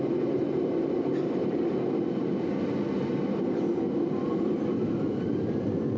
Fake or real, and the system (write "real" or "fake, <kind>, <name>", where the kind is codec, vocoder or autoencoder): real